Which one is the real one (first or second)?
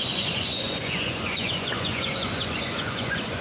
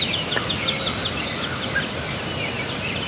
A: second